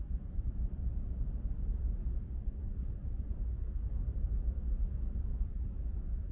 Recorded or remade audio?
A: remade